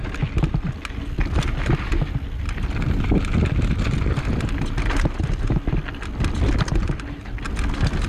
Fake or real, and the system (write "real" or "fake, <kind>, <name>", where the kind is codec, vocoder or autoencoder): real